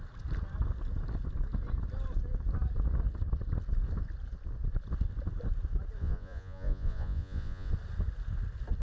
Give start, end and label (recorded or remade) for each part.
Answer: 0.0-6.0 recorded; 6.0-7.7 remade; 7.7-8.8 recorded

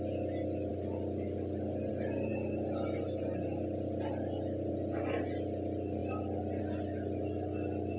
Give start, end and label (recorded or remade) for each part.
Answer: 0.0-8.0 recorded

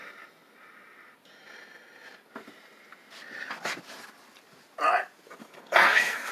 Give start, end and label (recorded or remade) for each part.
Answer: 0.0-5.4 recorded; 5.4-6.3 remade

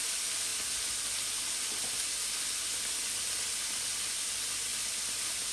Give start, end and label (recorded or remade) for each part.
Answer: 0.0-5.5 recorded

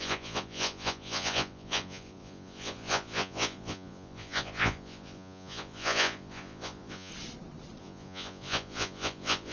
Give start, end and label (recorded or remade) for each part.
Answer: 0.0-7.1 remade; 7.1-7.8 recorded; 7.8-9.5 remade

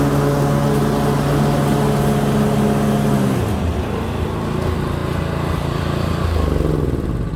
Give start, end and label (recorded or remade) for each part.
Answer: 0.0-5.0 recorded; 5.0-5.8 remade; 5.8-7.4 recorded